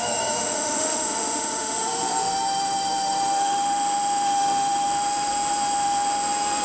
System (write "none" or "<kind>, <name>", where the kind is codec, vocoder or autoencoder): autoencoder, DAC-VAE